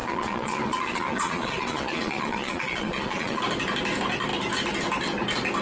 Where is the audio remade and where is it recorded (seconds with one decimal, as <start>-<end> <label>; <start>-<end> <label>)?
0.0-3.4 remade; 3.4-5.6 recorded